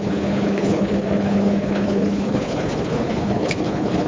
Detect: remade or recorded remade